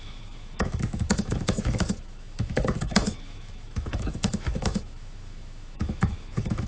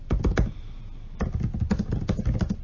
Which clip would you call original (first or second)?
second